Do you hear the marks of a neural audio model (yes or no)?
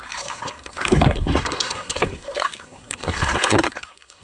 yes